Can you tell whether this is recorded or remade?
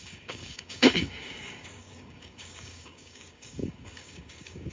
remade